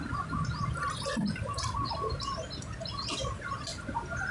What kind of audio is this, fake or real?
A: real